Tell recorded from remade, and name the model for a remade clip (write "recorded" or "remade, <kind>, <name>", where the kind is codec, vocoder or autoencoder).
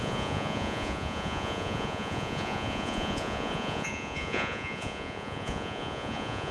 remade, vocoder, Vocos